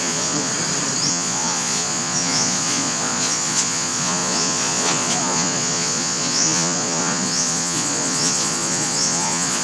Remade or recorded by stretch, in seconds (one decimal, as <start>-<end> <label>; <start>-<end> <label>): 0.0-0.5 remade; 0.5-1.1 recorded; 1.1-9.6 remade